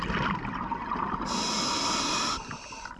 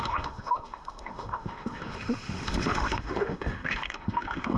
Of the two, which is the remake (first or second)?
second